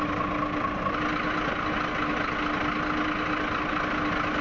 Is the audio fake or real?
real